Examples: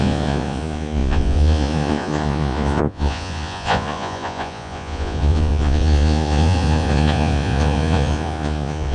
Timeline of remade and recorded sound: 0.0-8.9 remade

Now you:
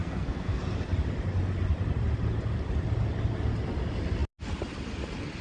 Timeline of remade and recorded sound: 0.0-0.6 remade; 0.6-5.4 recorded

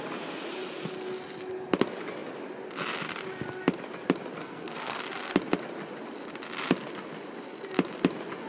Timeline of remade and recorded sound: 0.0-4.4 recorded; 4.4-5.0 remade; 5.0-8.5 recorded

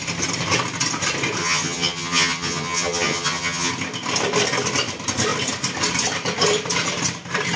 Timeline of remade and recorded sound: 0.0-1.4 recorded; 1.4-3.7 remade; 3.7-7.6 recorded

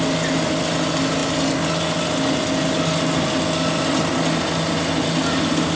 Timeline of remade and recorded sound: 0.0-5.8 recorded

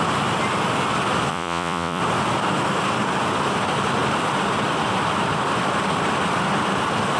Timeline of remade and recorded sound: 0.0-1.3 recorded; 1.3-2.0 remade; 2.0-7.2 recorded

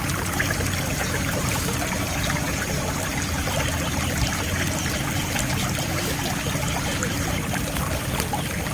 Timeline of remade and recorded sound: 0.0-1.0 recorded; 1.0-2.9 remade; 2.9-6.9 recorded; 6.9-7.4 remade; 7.4-8.7 recorded